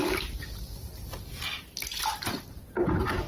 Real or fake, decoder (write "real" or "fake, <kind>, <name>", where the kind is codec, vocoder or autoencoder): fake, vocoder, BigVGAN v2